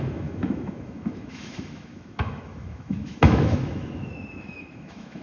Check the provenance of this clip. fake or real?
fake